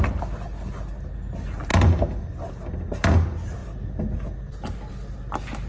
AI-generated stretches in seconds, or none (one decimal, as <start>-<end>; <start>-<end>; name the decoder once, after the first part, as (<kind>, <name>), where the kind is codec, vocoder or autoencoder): none